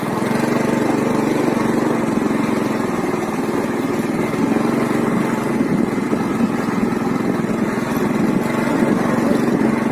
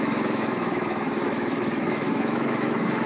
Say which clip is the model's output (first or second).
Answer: second